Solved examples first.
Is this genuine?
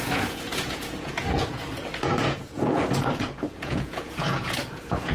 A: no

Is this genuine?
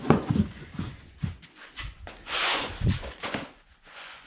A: no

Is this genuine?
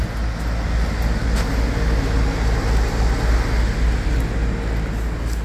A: yes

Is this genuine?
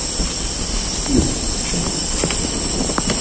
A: yes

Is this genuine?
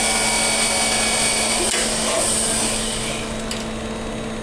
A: yes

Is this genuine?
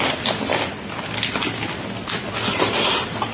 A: yes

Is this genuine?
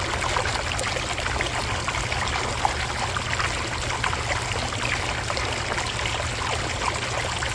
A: yes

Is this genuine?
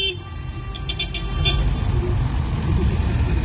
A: yes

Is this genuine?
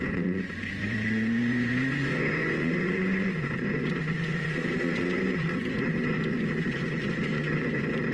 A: no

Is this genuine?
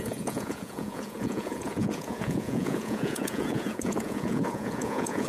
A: no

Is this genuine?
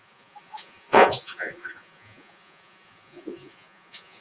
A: no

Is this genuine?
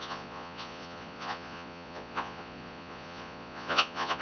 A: no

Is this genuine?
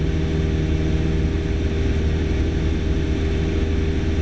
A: yes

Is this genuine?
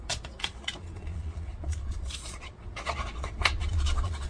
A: no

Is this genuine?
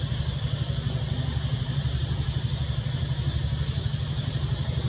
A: yes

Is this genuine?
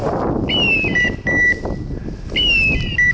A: yes